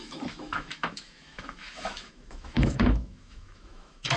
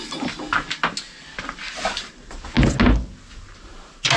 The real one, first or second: second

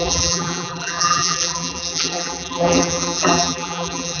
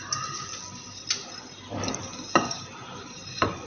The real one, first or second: second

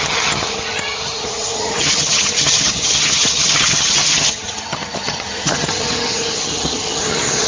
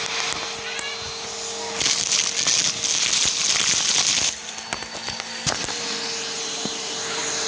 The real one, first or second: second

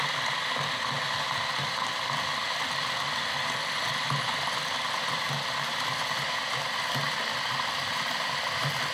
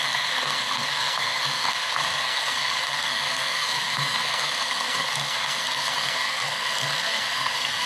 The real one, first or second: first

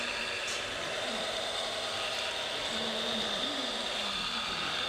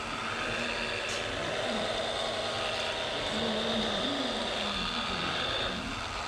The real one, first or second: second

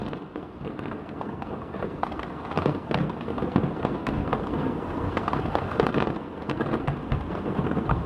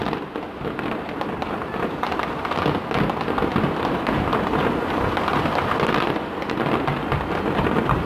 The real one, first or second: second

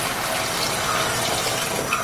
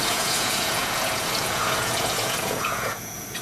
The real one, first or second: first